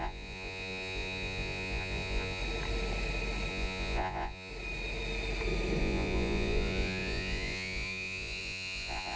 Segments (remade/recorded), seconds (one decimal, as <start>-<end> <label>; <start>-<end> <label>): 0.0-2.4 remade; 2.4-3.5 recorded; 3.5-4.5 remade; 4.5-5.8 recorded; 5.8-9.2 remade